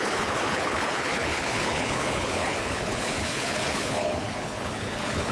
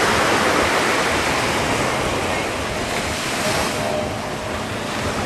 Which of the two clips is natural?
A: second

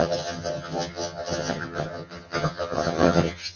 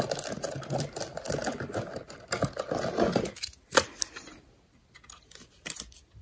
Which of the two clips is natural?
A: second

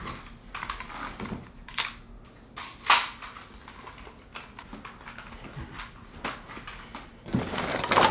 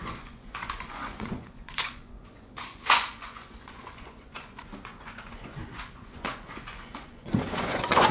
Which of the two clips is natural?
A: first